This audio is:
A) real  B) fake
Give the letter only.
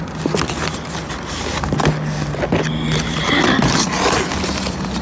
A